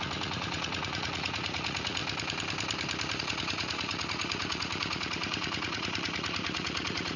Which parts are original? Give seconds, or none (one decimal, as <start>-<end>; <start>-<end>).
2.0-3.2